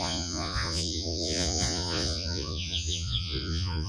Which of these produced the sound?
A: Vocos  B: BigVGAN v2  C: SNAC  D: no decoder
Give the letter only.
A